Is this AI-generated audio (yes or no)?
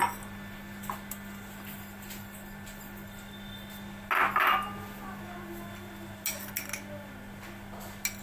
no